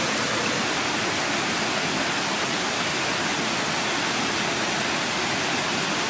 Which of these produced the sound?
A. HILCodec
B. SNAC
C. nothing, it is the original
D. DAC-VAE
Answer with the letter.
C